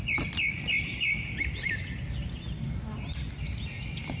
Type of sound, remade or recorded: recorded